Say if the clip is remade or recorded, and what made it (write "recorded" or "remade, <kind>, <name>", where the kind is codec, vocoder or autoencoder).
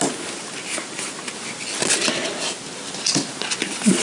recorded